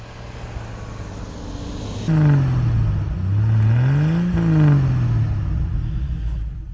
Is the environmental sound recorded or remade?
recorded